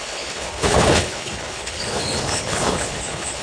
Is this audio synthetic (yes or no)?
yes